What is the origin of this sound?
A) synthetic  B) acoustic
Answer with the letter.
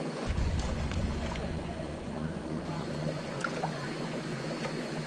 A